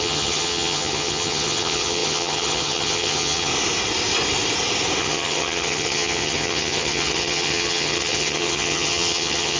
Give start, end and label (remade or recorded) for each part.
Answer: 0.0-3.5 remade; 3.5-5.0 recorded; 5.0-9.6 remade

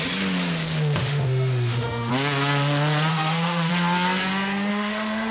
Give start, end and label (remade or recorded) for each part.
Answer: 0.0-1.0 recorded; 1.0-2.1 remade; 2.1-3.1 recorded; 3.1-3.7 remade; 3.7-4.7 recorded; 4.7-5.3 remade

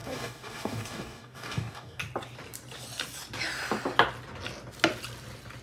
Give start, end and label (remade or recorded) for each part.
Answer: 0.0-2.0 remade; 2.0-5.6 recorded

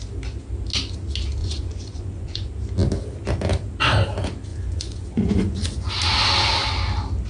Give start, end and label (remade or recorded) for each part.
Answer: 0.0-1.4 recorded; 1.4-2.5 remade; 2.5-4.5 recorded; 4.5-5.9 remade; 5.9-7.3 recorded